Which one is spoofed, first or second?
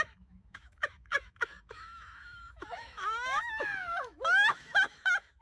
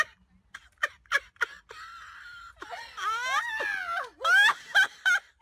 first